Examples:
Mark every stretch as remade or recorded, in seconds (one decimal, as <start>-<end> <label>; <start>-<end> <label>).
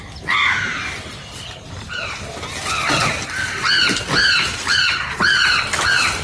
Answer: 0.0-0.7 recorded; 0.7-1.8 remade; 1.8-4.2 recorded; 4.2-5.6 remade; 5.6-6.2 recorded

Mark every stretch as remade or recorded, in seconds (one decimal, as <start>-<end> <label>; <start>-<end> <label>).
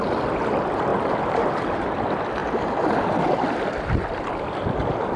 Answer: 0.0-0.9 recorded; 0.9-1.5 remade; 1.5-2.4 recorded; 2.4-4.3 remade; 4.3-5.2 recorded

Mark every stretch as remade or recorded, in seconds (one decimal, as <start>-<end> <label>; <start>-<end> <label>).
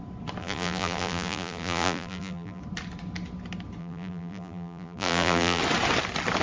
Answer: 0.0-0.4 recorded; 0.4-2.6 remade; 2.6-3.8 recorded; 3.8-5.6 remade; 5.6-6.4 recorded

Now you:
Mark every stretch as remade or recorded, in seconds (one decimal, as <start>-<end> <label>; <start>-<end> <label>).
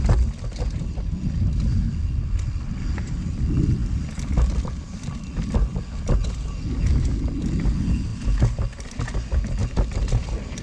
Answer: 0.0-3.8 recorded; 3.8-5.8 remade; 5.8-10.6 recorded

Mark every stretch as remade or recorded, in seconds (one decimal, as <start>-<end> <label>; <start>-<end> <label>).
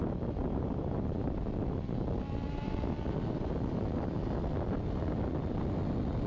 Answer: 0.0-0.4 recorded; 0.4-1.4 remade; 1.4-6.3 recorded